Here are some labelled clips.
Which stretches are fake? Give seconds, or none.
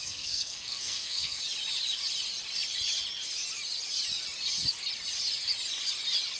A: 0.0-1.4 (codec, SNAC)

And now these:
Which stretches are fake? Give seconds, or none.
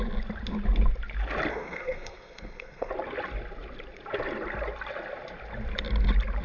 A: 1.5-2.9 (codec, SNAC)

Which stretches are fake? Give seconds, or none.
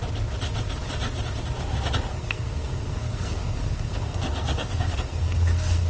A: 2.1-5.9 (codec, SNAC)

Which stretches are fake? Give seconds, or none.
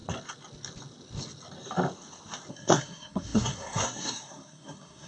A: 2.5-5.1 (codec, SNAC)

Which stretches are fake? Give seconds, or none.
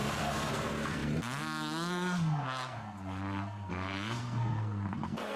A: 0.0-5.4 (codec, SNAC)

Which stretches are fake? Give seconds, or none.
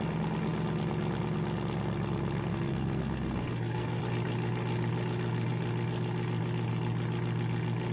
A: 2.5-4.0 (codec, SNAC)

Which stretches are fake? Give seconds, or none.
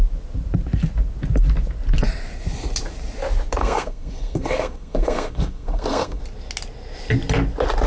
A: 3.6-6.2 (codec, SNAC)